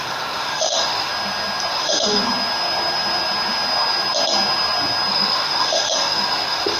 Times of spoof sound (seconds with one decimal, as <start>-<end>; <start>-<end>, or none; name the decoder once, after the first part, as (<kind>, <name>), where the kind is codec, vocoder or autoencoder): 0.0-1.1 (autoencoder, DAC-VAE); 1.7-2.2; 5.1-6.8